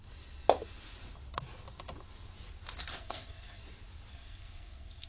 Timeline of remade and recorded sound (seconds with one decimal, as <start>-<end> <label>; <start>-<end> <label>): 0.0-2.8 recorded; 2.8-3.6 remade; 3.6-4.1 recorded; 4.1-5.1 remade

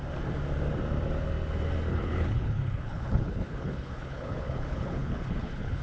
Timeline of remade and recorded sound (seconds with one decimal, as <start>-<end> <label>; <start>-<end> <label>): 0.0-1.9 recorded; 1.9-5.8 remade

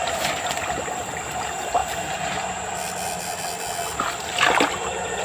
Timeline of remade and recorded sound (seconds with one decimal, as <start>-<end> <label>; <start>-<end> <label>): 0.0-5.2 recorded

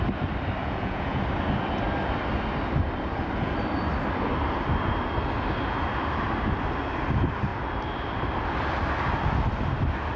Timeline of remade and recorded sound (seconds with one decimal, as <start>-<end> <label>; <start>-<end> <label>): 0.0-0.6 recorded; 0.6-1.2 remade; 1.2-10.2 recorded

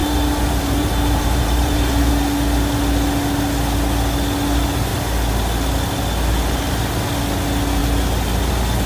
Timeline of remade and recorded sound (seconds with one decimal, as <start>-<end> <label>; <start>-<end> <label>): 0.0-2.1 remade; 2.1-8.9 recorded

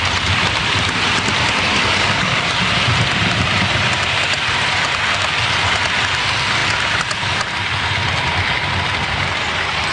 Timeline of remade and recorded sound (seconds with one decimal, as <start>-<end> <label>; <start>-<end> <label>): 0.0-1.7 recorded; 1.7-2.6 remade; 2.6-9.9 recorded

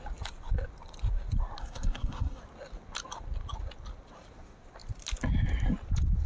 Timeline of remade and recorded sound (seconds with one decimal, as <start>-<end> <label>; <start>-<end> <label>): 0.0-1.6 recorded; 1.6-2.4 remade; 2.4-6.3 recorded

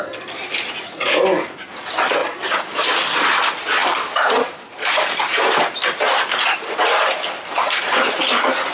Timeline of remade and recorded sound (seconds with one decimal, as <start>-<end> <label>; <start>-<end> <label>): 0.0-0.4 recorded; 0.4-1.1 remade; 1.1-2.2 recorded; 2.2-2.8 remade; 2.8-3.8 recorded; 3.8-8.2 remade; 8.2-8.7 recorded